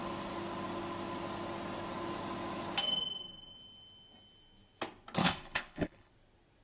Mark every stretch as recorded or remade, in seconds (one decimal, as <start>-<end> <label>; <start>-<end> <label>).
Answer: 0.0-5.2 recorded; 5.2-6.1 remade; 6.1-6.6 recorded